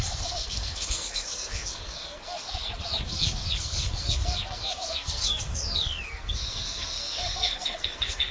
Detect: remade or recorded remade